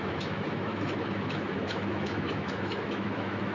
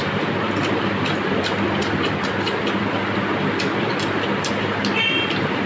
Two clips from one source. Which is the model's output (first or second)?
first